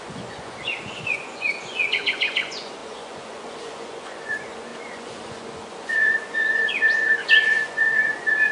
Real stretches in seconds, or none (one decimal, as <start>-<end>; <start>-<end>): none